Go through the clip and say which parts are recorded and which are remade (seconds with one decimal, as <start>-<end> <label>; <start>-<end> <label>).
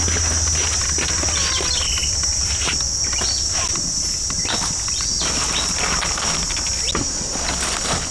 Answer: 0.0-8.1 recorded